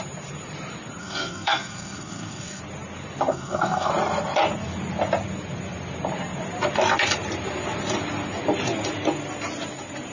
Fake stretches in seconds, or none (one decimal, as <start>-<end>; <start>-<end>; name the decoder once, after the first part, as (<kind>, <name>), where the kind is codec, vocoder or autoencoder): 1.0-2.6 (codec, SNAC); 3.3-3.9